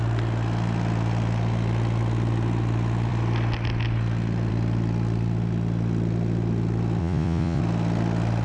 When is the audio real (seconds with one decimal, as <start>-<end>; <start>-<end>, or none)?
0.0-7.0; 7.6-8.4